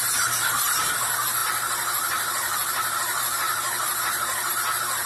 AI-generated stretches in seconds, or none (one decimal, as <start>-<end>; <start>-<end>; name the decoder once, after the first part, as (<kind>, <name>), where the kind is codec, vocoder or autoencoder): 0.0-5.1 (vocoder, BigVGAN v2)